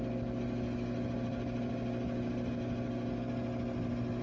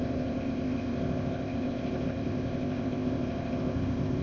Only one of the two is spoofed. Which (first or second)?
second